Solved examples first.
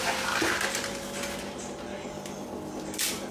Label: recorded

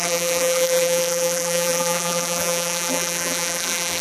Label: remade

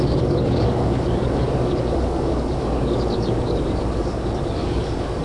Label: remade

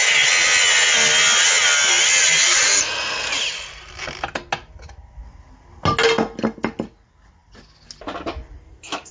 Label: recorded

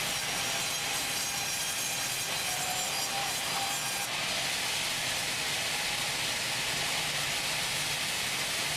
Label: recorded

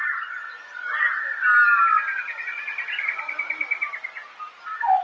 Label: recorded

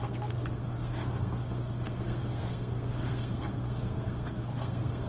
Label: remade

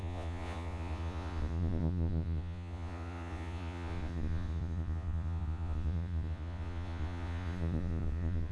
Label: remade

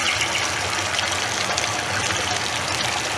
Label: recorded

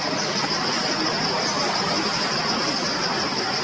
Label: recorded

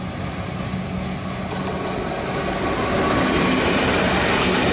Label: recorded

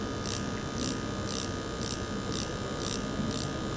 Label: recorded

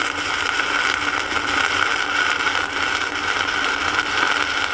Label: recorded